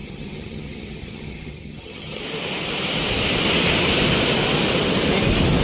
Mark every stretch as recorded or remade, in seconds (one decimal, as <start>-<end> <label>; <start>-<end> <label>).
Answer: 0.0-2.2 remade; 2.2-5.6 recorded